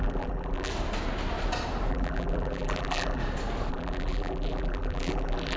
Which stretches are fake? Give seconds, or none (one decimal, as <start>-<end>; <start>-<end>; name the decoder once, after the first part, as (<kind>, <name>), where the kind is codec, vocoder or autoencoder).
0.0-0.7 (vocoder, BigVGAN v2); 1.9-3.2; 3.7-5.6